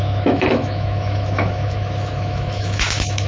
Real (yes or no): no